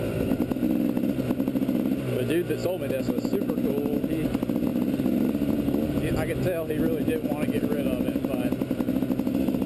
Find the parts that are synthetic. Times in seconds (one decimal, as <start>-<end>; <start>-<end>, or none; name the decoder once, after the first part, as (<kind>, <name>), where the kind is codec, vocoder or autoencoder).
none